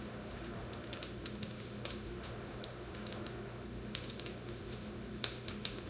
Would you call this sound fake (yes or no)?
yes